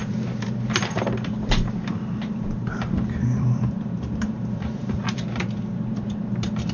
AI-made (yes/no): yes